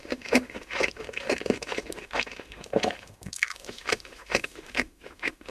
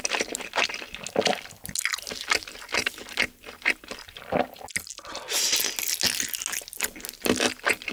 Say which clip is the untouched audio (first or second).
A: second